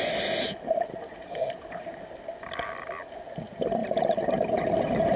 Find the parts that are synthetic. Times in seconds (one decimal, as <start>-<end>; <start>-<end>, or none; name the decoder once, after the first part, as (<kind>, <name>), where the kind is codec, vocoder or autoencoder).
3.8-4.8 (vocoder, BigVGAN v2)

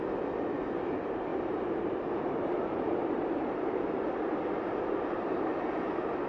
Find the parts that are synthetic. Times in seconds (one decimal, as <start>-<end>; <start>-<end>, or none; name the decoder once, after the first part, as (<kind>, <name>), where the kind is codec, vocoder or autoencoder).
none

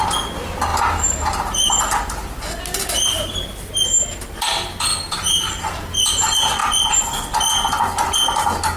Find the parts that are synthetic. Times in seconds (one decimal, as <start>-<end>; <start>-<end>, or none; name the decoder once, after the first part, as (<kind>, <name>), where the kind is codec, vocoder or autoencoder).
0.7-1.8 (vocoder, BigVGAN v2); 4.9-6.1

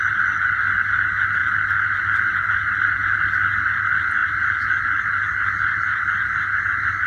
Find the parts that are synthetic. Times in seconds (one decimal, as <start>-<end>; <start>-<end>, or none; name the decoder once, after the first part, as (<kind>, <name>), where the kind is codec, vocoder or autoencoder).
none

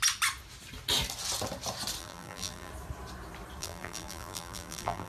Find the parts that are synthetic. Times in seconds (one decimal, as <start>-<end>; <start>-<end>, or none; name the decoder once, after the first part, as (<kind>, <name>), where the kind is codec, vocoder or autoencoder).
2.0-2.7 (vocoder, BigVGAN v2); 3.6-5.1

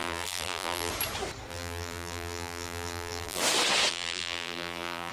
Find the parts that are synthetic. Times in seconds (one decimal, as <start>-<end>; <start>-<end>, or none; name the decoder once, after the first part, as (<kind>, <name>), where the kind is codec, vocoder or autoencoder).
0.0-0.9 (vocoder, BigVGAN v2); 1.5-3.4; 3.9-5.1